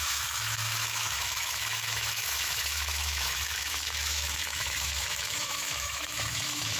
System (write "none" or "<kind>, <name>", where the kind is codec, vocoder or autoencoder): autoencoder, DAC-VAE